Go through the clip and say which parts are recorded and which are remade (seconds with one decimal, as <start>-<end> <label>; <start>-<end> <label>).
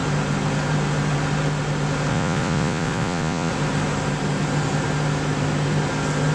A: 0.0-2.1 recorded; 2.1-3.5 remade; 3.5-6.3 recorded